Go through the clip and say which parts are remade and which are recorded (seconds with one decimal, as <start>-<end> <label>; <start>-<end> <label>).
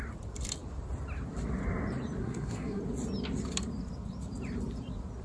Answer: 0.0-2.2 recorded; 2.2-2.8 remade; 2.8-5.2 recorded